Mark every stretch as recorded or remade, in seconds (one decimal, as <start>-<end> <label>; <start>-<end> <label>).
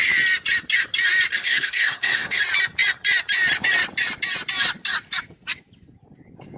0.0-1.3 recorded; 1.3-2.4 remade; 2.4-6.6 recorded